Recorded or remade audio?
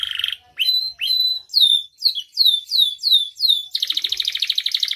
recorded